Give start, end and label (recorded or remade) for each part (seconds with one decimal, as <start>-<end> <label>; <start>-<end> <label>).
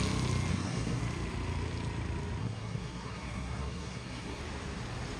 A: 0.0-0.5 recorded; 0.5-1.0 remade; 1.0-2.4 recorded; 2.4-4.4 remade; 4.4-5.2 recorded